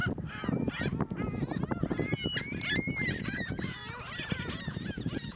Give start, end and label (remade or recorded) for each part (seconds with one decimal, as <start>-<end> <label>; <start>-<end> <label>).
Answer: 0.0-3.2 recorded; 3.2-3.8 remade; 3.8-4.4 recorded; 4.4-5.4 remade